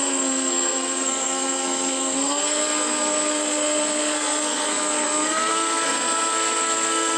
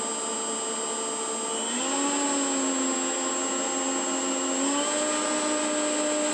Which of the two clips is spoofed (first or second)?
first